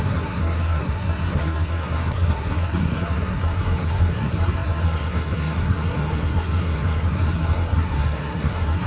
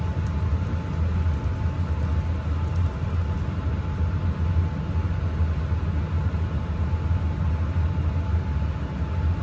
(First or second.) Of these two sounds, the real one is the second